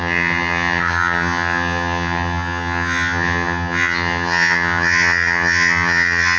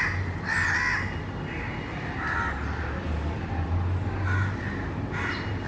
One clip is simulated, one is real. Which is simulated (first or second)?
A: first